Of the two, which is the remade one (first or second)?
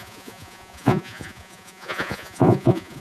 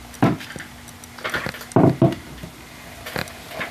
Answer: first